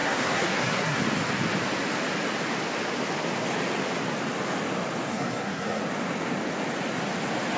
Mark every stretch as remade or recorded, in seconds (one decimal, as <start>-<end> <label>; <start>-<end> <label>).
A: 0.0-1.0 remade; 1.0-5.1 recorded; 5.1-5.8 remade; 5.8-7.6 recorded